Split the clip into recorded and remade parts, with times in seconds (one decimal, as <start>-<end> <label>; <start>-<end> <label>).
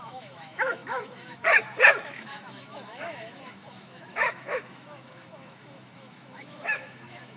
0.0-7.4 remade